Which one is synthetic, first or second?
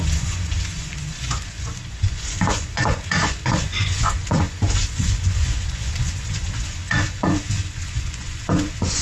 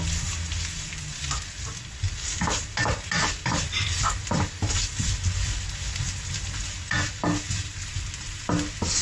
first